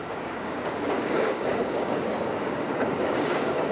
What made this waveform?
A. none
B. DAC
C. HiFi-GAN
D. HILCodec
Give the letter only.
B